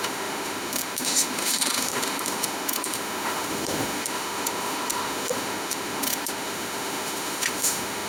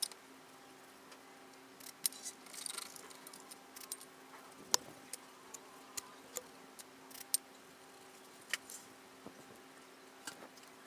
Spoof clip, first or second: first